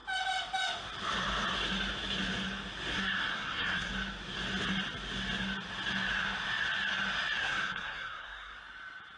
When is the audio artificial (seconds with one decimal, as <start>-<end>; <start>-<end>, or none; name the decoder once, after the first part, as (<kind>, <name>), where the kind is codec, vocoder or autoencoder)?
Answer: 2.9-3.9 (codec, SNAC); 7.4-8.6